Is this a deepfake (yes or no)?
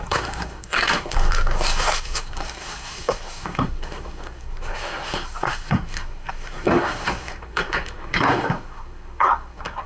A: yes